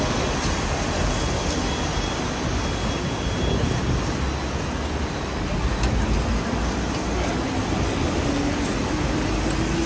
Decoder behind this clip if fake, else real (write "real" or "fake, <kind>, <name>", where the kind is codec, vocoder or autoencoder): real